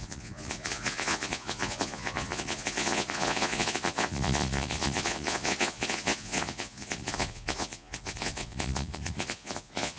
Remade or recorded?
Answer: remade